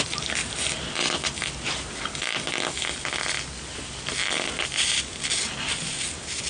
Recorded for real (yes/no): yes